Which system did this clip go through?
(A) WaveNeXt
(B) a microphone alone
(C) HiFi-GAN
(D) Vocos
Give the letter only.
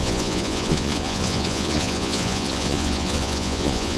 D